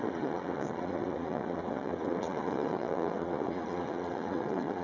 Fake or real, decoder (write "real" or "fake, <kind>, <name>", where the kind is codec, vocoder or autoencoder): fake, vocoder, Vocos